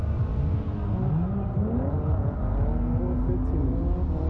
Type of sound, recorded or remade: recorded